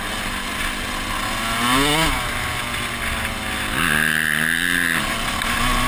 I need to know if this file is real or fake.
real